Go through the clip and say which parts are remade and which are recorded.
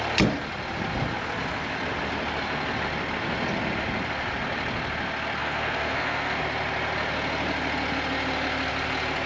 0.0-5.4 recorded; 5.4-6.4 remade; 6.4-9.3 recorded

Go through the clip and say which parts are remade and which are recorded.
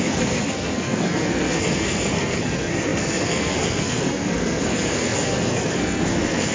0.0-6.5 remade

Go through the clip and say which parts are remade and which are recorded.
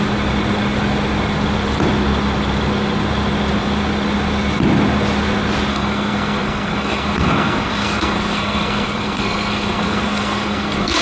0.0-5.7 recorded; 5.7-11.0 remade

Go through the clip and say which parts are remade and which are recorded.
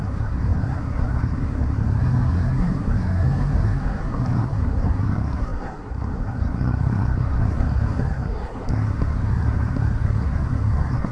0.0-11.1 remade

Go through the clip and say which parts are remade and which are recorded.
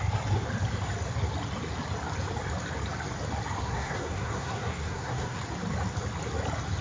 0.0-3.6 recorded; 3.6-5.4 remade; 5.4-6.8 recorded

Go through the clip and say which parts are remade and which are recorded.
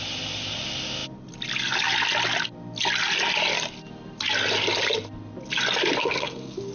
0.0-6.0 recorded; 6.0-6.7 remade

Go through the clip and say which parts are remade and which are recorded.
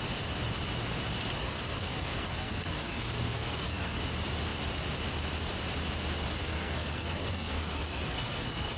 0.0-1.4 recorded; 1.4-4.0 remade; 4.0-6.4 recorded; 6.4-8.8 remade